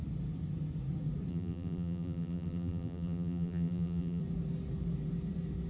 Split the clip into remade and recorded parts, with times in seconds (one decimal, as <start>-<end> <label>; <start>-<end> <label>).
0.0-1.3 recorded; 1.3-4.2 remade; 4.2-5.7 recorded